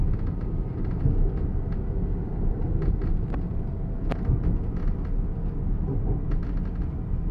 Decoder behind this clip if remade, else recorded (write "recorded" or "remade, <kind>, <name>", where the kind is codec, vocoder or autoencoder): recorded